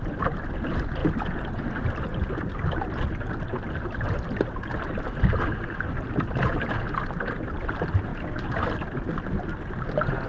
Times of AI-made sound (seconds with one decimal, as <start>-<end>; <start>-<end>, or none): none

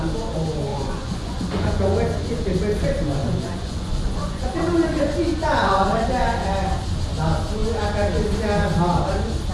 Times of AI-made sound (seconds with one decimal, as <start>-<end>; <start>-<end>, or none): 0.7-1.8; 3.2-6.1

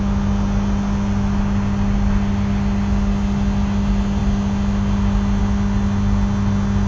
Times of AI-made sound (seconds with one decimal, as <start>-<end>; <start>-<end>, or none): none